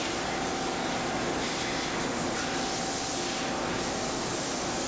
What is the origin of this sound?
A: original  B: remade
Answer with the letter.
A